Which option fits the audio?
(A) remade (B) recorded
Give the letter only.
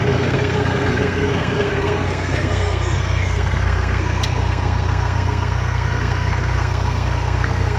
A